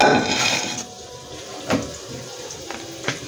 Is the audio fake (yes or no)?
no